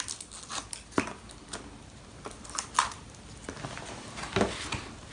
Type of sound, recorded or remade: recorded